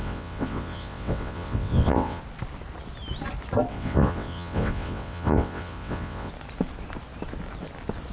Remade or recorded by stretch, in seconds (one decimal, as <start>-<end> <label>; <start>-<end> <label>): 0.0-2.2 remade; 2.2-3.7 recorded; 3.7-6.3 remade; 6.3-8.1 recorded